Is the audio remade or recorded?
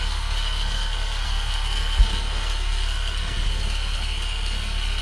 remade